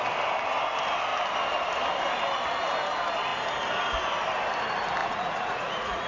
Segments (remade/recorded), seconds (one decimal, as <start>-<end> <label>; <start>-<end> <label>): 0.0-5.0 recorded; 5.0-6.1 remade